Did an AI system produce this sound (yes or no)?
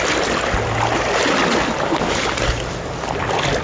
no